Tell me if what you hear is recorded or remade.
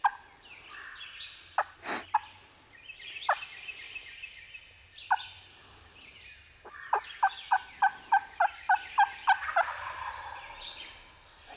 recorded